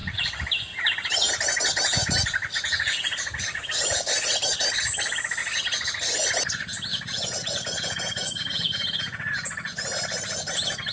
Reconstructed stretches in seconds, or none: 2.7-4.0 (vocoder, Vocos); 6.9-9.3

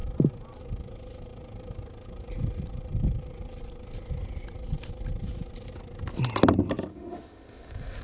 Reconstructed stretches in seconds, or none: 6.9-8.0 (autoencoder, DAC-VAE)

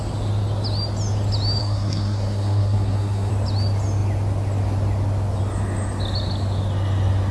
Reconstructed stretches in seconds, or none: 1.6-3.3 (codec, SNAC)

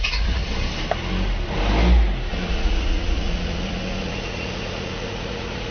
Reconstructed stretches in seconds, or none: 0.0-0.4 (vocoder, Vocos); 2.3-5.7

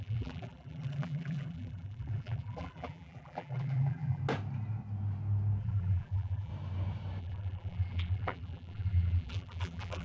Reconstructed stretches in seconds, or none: 0.0-4.2 (vocoder, BigVGAN v2); 5.6-6.5; 7.2-10.0

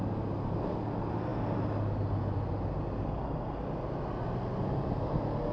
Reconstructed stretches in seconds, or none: none

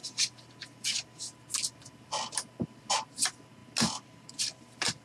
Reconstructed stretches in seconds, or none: none